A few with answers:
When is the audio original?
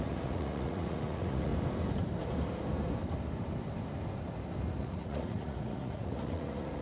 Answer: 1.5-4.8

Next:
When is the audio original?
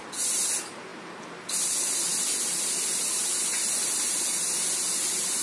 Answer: 0.0-5.4